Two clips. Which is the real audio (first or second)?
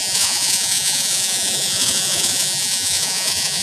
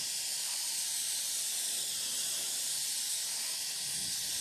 second